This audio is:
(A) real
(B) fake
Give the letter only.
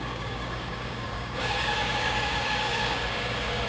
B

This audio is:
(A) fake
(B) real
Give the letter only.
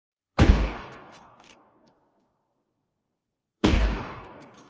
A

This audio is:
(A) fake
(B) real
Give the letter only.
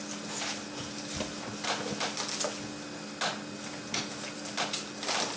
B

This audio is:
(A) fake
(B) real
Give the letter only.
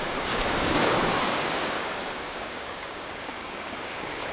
A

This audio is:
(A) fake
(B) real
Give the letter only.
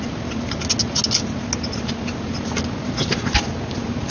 B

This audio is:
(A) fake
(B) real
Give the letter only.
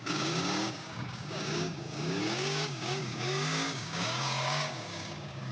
A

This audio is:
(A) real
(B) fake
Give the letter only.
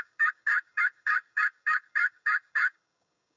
B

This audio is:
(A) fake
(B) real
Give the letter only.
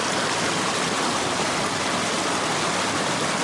B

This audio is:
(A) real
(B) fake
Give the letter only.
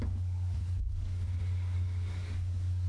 B